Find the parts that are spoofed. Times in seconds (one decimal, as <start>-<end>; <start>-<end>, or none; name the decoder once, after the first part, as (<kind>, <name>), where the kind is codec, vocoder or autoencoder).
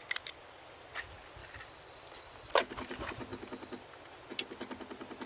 1.4-2.5 (vocoder, BigVGAN v2); 3.3-3.8